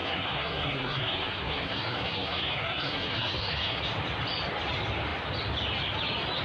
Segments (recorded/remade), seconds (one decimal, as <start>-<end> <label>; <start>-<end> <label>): 0.0-3.8 remade; 3.8-6.4 recorded